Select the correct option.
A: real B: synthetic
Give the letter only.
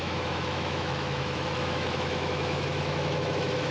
B